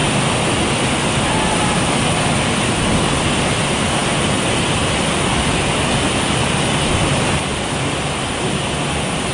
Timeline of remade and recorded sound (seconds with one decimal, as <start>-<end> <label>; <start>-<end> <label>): 0.0-9.3 recorded

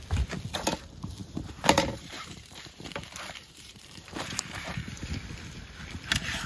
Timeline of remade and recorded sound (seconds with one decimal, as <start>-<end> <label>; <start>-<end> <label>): 0.0-1.2 recorded; 1.2-5.1 remade; 5.1-6.5 recorded